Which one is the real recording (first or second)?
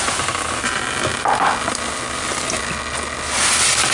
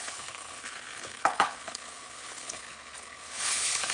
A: first